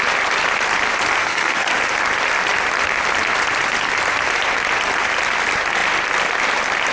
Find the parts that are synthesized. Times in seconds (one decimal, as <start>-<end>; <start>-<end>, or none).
1.2-1.7